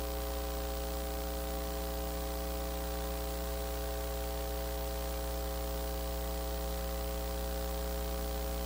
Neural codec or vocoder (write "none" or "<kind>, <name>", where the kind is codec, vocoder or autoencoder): none